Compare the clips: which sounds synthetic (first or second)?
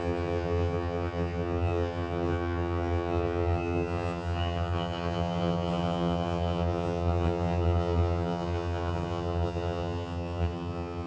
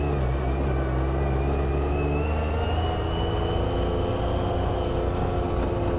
first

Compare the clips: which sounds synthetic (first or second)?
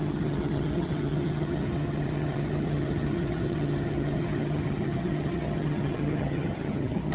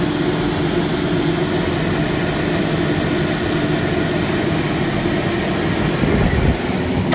first